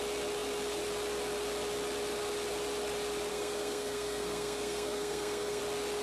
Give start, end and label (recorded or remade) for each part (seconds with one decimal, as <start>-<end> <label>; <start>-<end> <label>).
0.0-3.3 recorded; 3.3-5.6 remade; 5.6-6.0 recorded